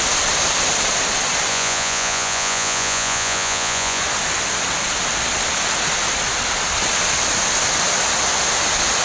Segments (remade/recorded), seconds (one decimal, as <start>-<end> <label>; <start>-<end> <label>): 0.0-1.5 recorded; 1.5-4.0 remade; 4.0-9.0 recorded